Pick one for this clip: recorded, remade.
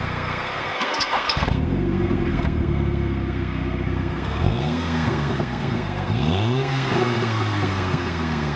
remade